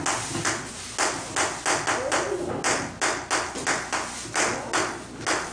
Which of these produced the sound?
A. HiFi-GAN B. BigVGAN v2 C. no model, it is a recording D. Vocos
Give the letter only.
C